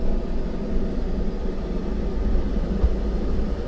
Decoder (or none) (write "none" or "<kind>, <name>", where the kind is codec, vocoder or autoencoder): none